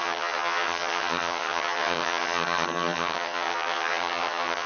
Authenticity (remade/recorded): remade